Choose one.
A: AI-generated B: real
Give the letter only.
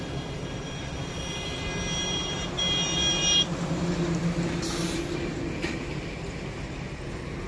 B